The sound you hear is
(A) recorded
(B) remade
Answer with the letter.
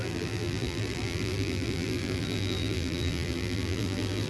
B